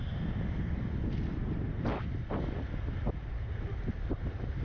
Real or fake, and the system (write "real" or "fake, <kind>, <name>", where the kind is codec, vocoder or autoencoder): real